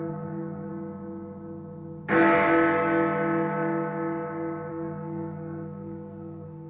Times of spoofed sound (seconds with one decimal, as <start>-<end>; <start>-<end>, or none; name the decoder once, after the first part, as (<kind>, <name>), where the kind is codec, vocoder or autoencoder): 0.0-0.7 (codec, SNAC); 4.7-6.7